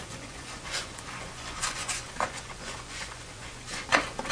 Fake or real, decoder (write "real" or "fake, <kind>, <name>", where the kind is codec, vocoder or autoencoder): fake, vocoder, Vocos